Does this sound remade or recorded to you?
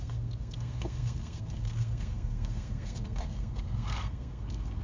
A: remade